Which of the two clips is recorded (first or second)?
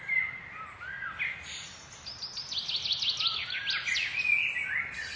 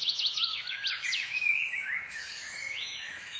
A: first